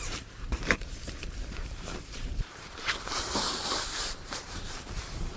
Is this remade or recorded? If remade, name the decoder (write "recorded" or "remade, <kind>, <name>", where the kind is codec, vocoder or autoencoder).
remade, vocoder, BigVGAN v2